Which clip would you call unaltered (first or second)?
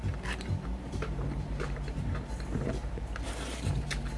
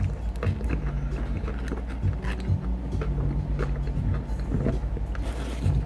second